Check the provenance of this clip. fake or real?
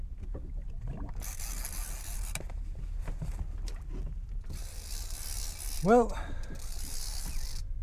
real